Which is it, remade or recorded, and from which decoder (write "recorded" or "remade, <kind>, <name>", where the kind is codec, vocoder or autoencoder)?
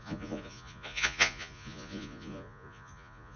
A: remade, vocoder, Vocos